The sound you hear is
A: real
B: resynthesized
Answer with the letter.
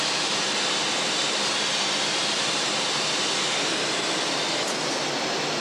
A